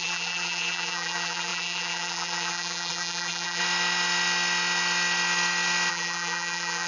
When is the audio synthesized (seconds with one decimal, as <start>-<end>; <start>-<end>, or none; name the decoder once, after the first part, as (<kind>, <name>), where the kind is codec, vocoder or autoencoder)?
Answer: 0.0-3.6 (vocoder, BigVGAN v2); 5.9-6.9